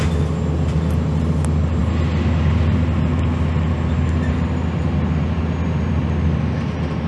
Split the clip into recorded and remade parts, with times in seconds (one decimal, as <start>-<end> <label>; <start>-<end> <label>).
0.0-7.1 recorded